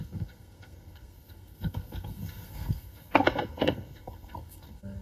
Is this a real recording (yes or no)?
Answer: no